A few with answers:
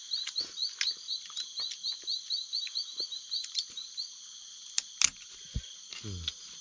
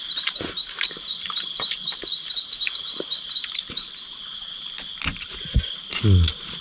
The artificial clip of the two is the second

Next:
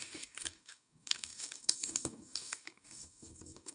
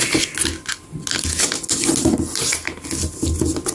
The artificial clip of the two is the first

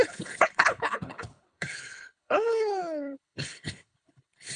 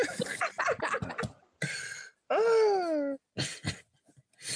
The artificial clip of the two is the first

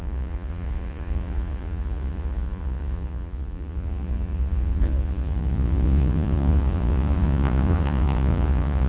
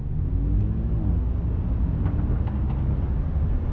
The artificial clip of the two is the first